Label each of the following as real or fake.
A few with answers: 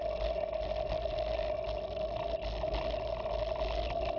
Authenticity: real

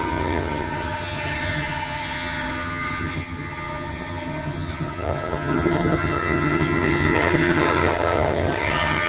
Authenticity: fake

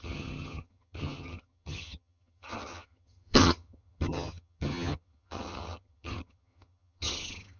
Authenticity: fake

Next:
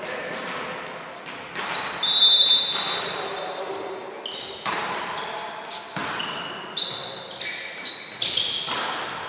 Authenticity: real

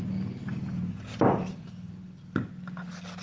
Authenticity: real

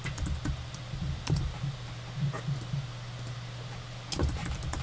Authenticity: real